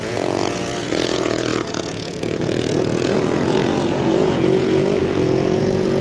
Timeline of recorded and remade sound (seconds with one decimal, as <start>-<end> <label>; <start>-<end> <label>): 0.0-6.0 remade